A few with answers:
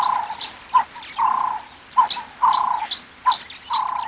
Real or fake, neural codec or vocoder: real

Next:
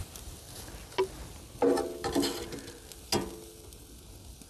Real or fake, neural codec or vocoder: real